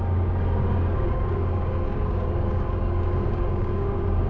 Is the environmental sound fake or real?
fake